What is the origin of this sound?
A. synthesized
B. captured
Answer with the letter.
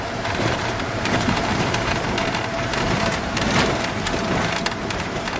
A